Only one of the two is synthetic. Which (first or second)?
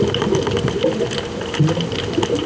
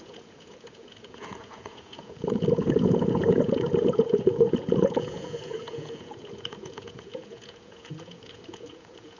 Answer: second